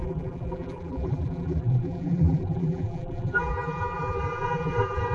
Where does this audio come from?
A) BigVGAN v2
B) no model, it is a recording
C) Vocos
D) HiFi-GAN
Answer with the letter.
A